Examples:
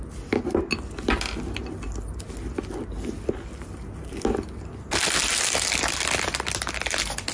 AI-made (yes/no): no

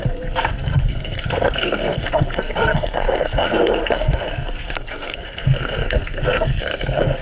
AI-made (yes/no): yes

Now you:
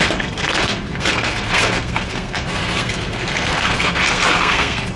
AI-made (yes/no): yes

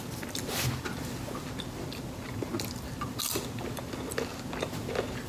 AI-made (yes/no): no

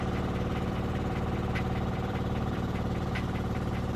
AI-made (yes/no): yes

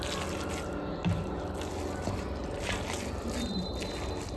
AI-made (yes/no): no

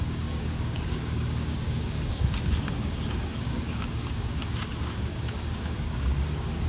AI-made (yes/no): yes